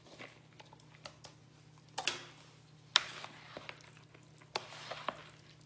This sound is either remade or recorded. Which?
recorded